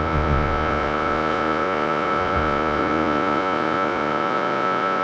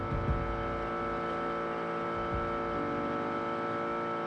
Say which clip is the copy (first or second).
first